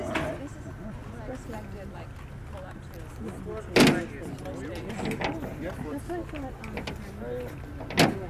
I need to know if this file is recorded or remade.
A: recorded